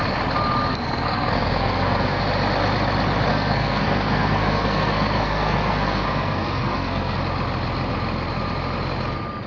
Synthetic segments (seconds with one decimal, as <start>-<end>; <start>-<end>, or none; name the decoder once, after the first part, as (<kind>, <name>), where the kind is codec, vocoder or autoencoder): 0.7-2.2 (codec, SNAC); 3.3-7.2